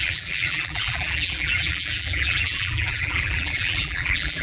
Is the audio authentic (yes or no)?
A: no